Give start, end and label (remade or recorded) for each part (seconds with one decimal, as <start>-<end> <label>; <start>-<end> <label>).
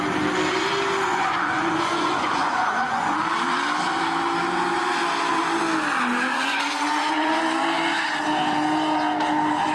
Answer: 0.0-1.1 recorded; 1.1-3.2 remade; 3.2-6.3 recorded; 6.3-7.4 remade; 7.4-9.7 recorded